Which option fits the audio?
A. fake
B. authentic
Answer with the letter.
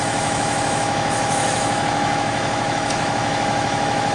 A